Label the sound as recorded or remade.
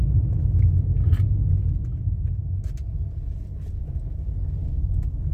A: recorded